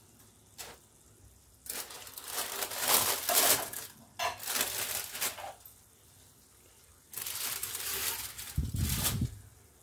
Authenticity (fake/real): real